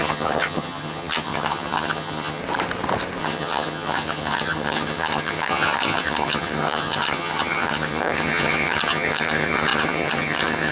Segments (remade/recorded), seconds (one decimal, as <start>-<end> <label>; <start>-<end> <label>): 0.0-2.4 remade; 2.4-3.2 recorded; 3.2-10.7 remade